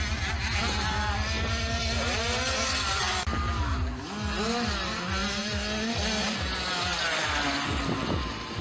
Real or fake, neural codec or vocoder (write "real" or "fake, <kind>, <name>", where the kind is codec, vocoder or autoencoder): real